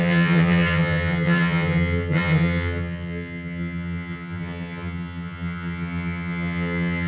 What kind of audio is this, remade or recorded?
remade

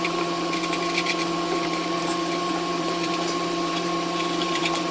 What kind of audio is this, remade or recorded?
remade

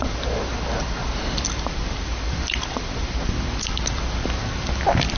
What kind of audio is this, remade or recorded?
recorded